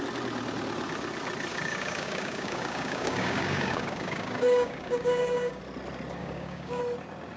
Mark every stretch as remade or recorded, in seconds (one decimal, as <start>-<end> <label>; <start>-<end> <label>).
0.0-1.5 recorded; 1.5-5.6 remade; 5.6-6.2 recorded; 6.2-6.8 remade; 6.8-7.4 recorded